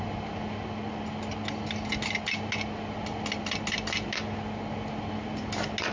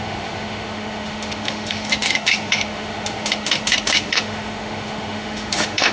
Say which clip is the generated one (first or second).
second